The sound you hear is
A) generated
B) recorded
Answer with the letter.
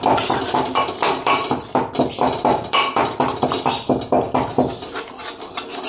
B